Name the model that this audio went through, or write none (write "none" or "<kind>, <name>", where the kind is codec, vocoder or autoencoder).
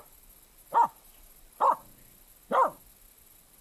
none